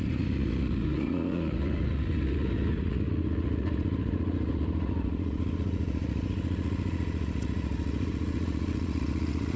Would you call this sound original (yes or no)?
no